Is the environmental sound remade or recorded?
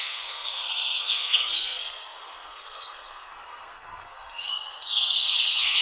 remade